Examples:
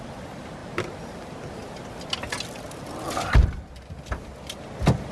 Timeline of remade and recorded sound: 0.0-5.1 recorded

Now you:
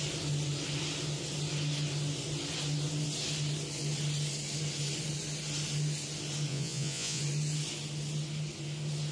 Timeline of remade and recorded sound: 0.0-6.5 recorded; 6.5-7.2 remade; 7.2-9.1 recorded

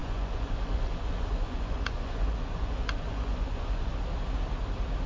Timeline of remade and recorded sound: 0.0-3.9 remade; 3.9-5.1 recorded